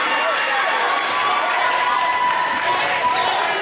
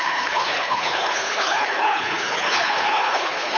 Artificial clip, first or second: second